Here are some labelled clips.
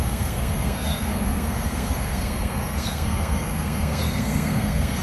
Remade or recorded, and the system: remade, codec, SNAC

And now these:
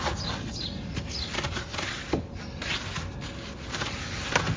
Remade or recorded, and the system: recorded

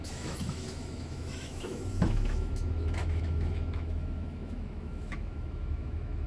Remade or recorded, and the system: remade, autoencoder, DAC-VAE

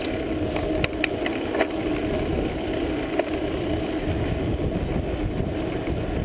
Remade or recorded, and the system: recorded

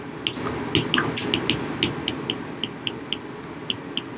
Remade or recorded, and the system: recorded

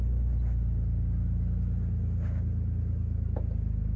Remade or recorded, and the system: recorded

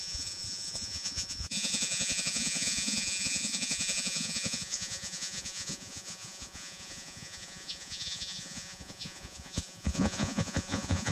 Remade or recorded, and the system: remade, vocoder, Vocos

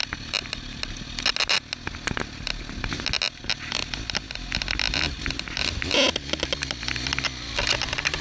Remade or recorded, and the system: recorded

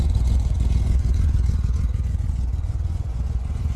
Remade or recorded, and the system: remade, vocoder, Vocos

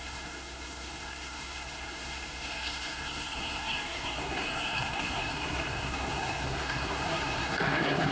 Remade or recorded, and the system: remade, codec, SNAC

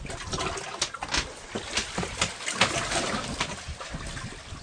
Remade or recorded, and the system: recorded